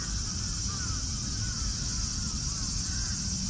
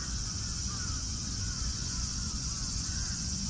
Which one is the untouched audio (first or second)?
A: first